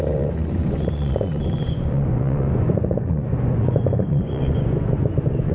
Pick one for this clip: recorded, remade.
remade